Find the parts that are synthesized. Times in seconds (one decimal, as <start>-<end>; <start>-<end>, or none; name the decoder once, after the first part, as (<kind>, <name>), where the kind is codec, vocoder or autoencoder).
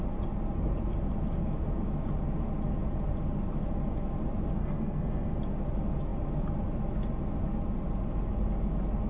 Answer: 4.6-5.3 (codec, SNAC)